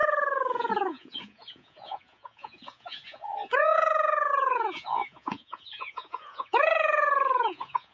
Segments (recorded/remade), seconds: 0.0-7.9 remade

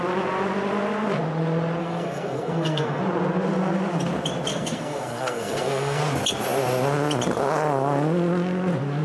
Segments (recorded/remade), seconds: 0.0-1.8 recorded; 1.8-3.0 remade; 3.0-4.5 recorded; 4.5-6.0 remade; 6.0-9.0 recorded